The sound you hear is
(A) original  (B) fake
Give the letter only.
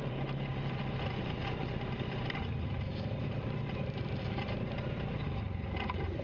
B